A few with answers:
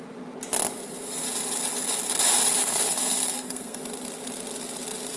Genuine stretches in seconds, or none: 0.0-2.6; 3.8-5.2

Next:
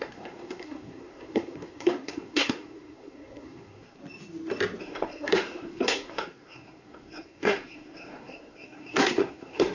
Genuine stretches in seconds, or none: 4.0-4.8

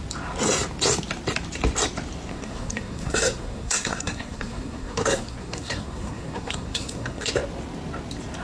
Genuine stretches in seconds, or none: 0.0-2.3; 7.3-8.4

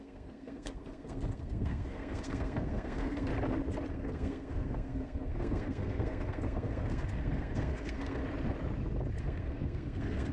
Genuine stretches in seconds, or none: 3.3-3.9; 8.2-9.2